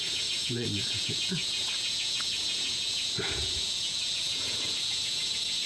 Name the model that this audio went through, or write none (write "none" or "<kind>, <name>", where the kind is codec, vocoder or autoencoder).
vocoder, Vocos